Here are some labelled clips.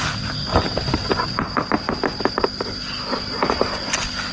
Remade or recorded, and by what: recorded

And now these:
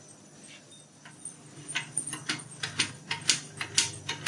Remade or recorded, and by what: recorded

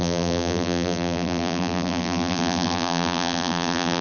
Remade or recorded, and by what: remade, vocoder, BigVGAN v2